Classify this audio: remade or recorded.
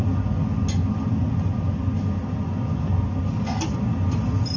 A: recorded